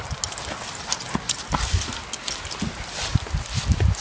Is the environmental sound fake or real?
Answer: real